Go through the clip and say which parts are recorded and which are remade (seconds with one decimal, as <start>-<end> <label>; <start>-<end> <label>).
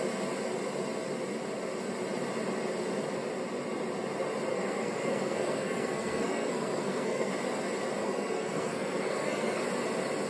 0.0-4.5 recorded; 4.5-7.3 remade; 7.3-8.0 recorded; 8.0-9.6 remade; 9.6-10.3 recorded